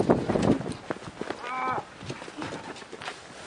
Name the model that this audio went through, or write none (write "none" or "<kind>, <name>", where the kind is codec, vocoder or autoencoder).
none